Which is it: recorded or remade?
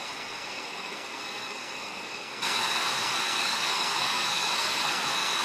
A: remade